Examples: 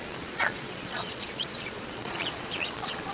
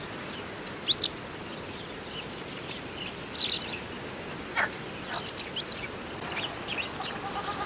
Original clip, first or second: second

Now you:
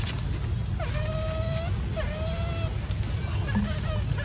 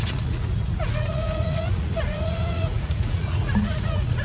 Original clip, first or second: first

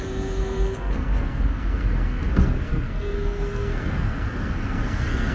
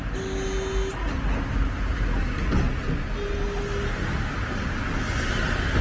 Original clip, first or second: second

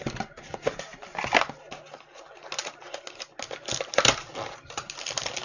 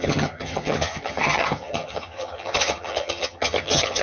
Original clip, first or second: first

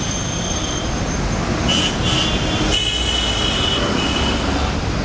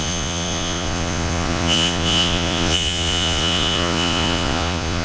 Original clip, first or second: first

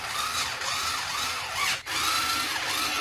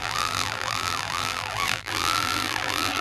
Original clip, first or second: first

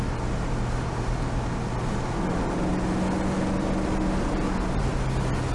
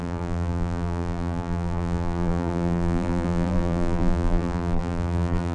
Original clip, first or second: first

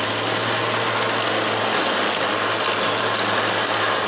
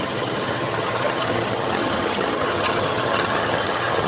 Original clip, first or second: first